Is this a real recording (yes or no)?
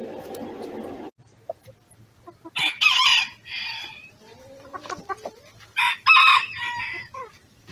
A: yes